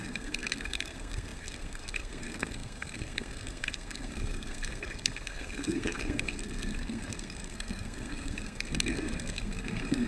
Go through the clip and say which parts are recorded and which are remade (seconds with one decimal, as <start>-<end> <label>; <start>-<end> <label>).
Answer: 0.0-10.1 remade